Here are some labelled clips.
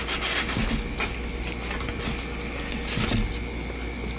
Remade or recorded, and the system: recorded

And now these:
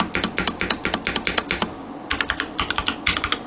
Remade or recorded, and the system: recorded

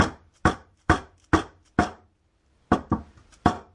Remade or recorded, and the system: remade, vocoder, BigVGAN v2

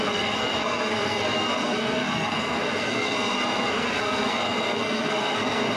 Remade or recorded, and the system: remade, codec, SNAC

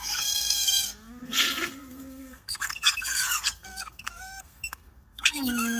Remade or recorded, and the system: remade, codec, SNAC